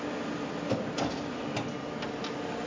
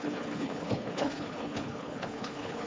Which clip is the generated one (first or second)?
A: second